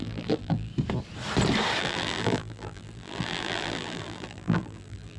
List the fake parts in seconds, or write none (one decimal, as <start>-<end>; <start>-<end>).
0.0-0.7; 1.8-5.2